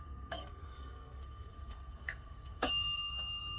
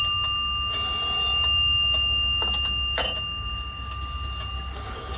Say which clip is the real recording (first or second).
second